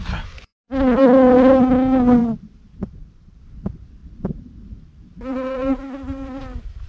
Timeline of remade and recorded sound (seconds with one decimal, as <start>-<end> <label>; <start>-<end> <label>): 0.0-2.2 recorded; 2.2-3.4 remade; 3.4-4.0 recorded; 4.0-6.4 remade; 6.4-6.9 recorded